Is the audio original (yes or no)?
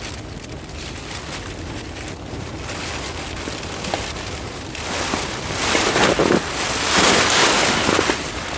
yes